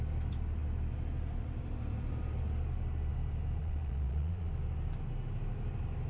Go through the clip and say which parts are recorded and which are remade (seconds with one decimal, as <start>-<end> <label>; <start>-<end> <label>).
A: 0.0-3.6 recorded; 3.6-4.5 remade; 4.5-6.1 recorded